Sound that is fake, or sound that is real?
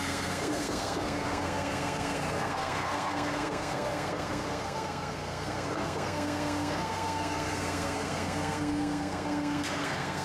fake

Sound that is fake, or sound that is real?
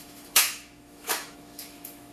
fake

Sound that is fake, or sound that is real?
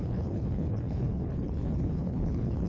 fake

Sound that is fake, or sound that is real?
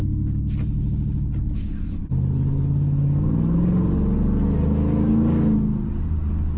real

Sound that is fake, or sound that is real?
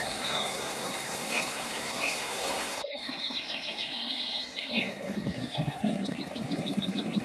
fake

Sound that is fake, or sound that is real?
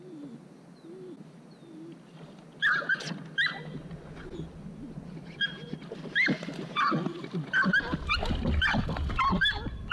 real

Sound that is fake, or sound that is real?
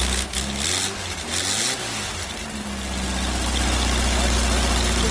real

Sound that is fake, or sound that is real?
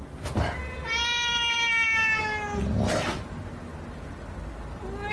real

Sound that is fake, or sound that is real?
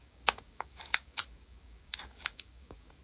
fake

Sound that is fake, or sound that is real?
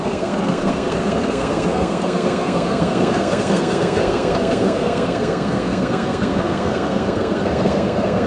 fake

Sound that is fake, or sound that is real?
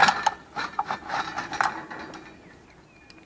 real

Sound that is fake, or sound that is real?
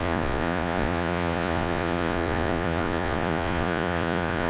fake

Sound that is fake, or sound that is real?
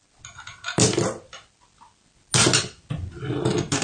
real